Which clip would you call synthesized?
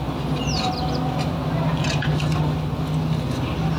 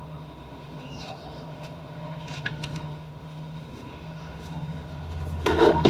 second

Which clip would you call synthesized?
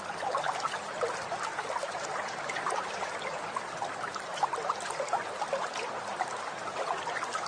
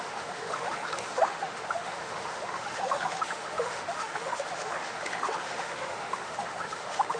second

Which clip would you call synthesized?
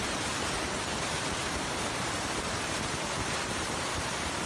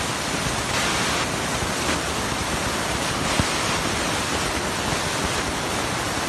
first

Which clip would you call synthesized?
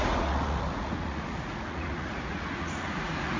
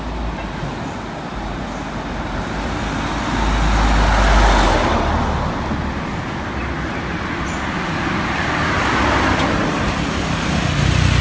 first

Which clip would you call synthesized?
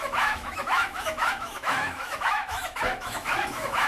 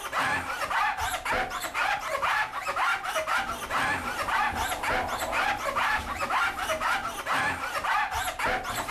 first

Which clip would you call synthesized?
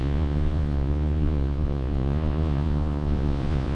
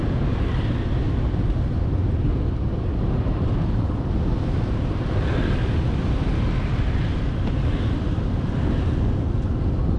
first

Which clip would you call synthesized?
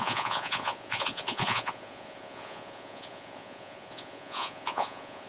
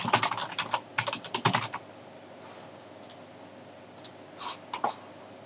first